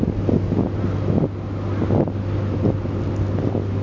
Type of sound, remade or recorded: recorded